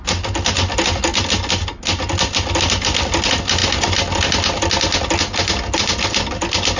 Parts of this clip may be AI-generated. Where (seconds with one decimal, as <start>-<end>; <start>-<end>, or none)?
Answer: none